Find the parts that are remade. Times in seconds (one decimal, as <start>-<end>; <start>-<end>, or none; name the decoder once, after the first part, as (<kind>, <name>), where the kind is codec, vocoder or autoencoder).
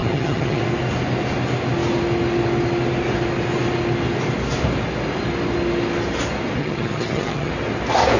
0.0-0.6 (vocoder, HiFi-GAN); 6.6-7.5